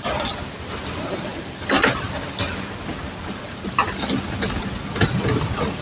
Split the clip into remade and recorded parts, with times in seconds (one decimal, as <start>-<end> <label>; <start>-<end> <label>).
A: 0.0-5.8 recorded